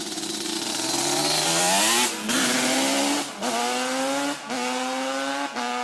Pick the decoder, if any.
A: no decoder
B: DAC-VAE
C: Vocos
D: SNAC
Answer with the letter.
A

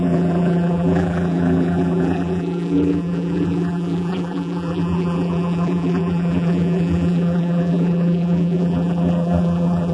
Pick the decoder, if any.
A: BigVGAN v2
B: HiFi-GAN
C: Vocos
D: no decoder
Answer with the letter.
A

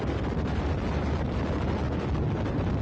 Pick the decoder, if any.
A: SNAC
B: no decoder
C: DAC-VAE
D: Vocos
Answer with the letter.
B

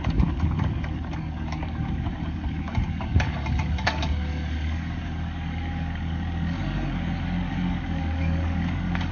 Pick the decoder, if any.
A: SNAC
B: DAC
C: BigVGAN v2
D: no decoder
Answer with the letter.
B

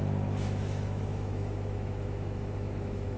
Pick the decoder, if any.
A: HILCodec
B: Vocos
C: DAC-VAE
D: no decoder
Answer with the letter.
C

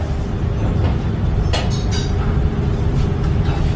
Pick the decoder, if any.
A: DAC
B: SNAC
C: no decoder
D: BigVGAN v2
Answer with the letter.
C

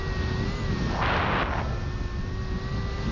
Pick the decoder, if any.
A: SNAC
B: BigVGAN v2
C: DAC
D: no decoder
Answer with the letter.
D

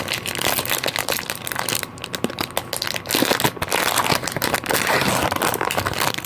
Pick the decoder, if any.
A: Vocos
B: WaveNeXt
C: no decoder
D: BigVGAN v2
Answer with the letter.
C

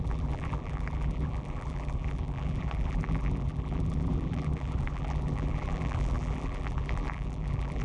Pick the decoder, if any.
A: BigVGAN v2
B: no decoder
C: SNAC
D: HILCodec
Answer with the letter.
A